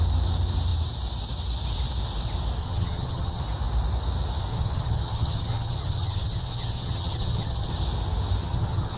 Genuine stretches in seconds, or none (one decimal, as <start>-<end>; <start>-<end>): 0.0-2.6; 3.4-4.5; 7.7-8.4